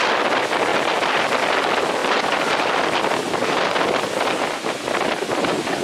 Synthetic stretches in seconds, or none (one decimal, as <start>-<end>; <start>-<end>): 2.0-4.8